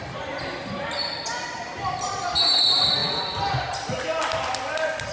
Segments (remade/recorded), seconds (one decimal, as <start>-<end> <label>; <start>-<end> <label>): 0.0-5.1 recorded